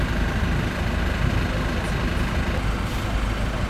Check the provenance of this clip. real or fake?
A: real